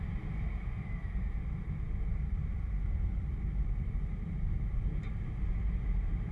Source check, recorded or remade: remade